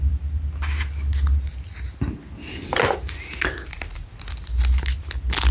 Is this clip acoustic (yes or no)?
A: yes